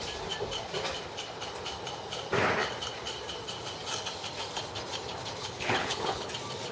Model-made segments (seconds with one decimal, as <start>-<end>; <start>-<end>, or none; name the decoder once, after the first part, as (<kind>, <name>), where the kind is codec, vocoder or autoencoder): 5.4-6.3 (codec, HILCodec)